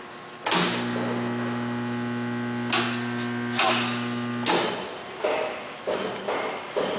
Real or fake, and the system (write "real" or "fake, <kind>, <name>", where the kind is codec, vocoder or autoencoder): real